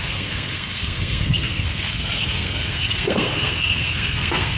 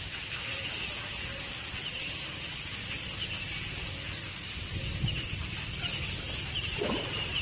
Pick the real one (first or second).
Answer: second